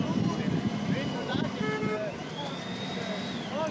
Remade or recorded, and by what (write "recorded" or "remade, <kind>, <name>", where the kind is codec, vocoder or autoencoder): recorded